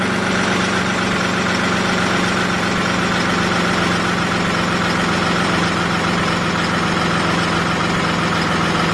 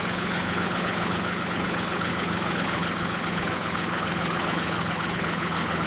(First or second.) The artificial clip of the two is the second